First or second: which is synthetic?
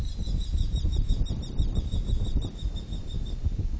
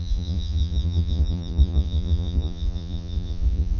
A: second